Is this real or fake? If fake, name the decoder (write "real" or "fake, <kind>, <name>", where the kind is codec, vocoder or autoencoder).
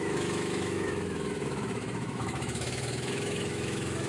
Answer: fake, autoencoder, DAC-VAE